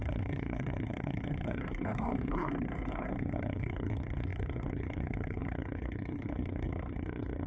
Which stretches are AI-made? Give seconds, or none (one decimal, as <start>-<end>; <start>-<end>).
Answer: 0.0-7.5